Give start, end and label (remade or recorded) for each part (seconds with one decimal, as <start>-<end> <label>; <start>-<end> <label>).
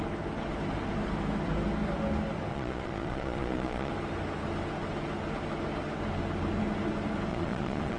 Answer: 0.0-2.5 recorded; 2.5-3.9 remade; 3.9-7.3 recorded; 7.3-8.0 remade